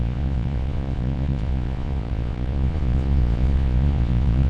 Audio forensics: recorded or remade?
remade